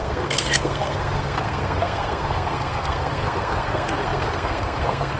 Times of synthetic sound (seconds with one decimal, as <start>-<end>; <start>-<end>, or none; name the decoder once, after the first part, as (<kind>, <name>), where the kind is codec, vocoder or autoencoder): 0.0-5.2 (codec, SNAC)